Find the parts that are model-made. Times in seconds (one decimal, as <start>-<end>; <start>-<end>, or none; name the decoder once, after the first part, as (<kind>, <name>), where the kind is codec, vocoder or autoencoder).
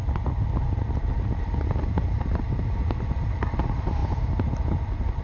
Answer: none